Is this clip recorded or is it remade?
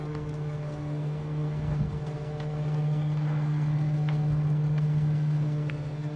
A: remade